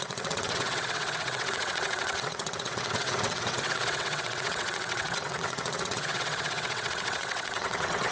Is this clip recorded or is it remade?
remade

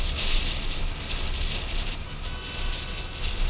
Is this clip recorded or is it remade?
recorded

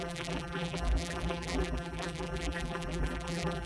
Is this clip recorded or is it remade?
remade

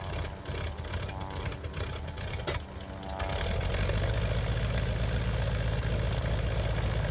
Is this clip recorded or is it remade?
recorded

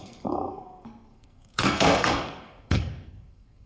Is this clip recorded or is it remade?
remade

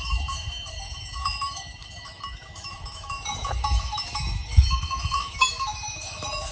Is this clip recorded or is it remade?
remade